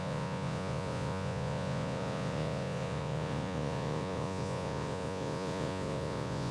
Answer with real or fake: fake